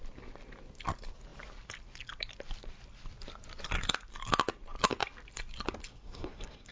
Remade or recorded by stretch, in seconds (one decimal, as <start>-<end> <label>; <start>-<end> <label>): 0.0-5.9 recorded; 5.9-6.7 remade